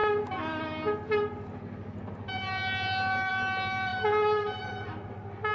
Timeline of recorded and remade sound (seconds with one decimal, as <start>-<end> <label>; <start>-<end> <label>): 0.0-5.5 recorded